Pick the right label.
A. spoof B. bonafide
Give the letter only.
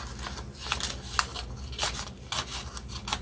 B